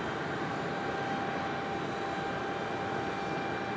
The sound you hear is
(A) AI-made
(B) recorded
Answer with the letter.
B